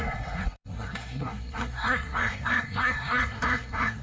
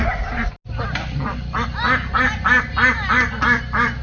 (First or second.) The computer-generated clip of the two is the first